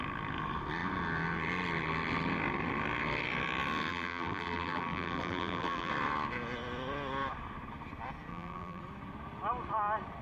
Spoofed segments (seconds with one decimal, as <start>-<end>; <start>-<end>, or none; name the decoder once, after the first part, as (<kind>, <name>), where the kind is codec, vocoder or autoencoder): 3.9-5.9 (vocoder, BigVGAN v2); 8.3-8.8